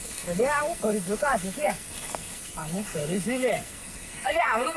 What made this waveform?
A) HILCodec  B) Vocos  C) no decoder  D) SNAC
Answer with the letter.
D